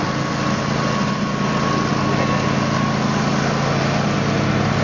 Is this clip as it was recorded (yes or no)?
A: yes